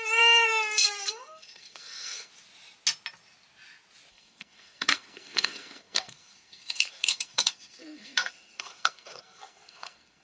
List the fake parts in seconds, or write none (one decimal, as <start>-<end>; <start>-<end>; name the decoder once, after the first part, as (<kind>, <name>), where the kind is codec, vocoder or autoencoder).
0.0-2.3 (codec, SNAC); 4.1-10.2